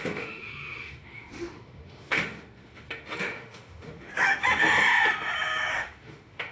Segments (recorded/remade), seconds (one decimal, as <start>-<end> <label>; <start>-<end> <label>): 0.0-4.1 remade; 4.1-5.7 recorded; 5.7-6.5 remade